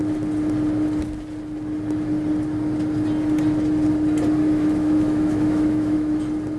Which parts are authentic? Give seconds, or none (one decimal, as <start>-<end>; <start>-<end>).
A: 0.0-4.4; 6.1-6.6